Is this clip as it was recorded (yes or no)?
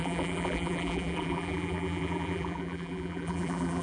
no